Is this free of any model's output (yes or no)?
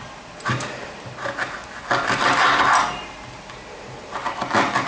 yes